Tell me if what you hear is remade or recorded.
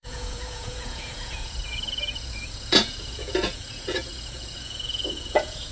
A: remade